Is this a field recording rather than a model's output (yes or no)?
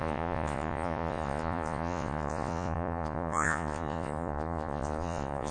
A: no